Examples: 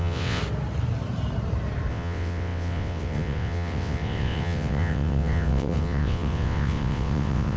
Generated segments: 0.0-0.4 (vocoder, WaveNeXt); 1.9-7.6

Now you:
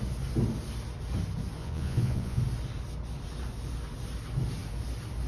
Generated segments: 1.6-2.4 (vocoder, Vocos)

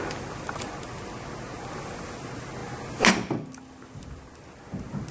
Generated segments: none

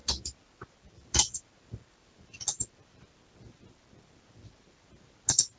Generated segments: none